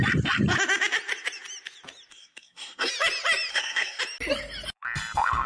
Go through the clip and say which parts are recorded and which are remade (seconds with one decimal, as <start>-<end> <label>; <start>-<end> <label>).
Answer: 0.0-2.1 recorded; 2.1-2.9 remade; 2.9-3.5 recorded; 3.5-4.0 remade; 4.0-5.5 recorded